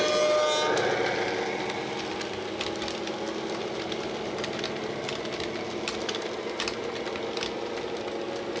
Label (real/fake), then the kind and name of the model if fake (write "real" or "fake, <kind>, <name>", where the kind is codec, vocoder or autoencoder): real